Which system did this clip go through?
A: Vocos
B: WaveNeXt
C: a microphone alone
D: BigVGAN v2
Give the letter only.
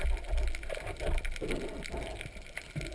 C